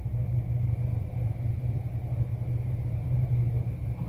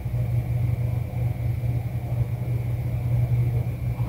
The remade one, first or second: first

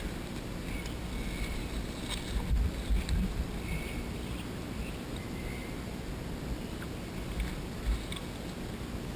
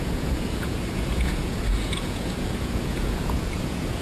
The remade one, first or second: second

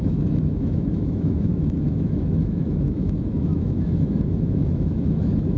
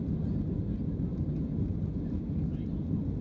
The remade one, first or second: first